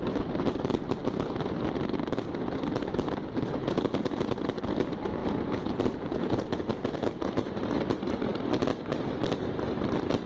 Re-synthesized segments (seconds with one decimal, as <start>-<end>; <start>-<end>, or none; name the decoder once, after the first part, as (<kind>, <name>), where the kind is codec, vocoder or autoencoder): 3.6-4.3 (vocoder, Vocos); 5.2-7.5